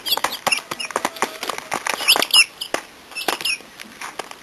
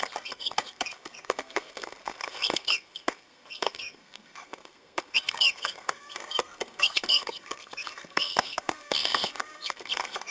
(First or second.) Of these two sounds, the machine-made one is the second